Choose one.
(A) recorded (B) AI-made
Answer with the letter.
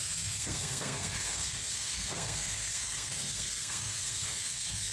B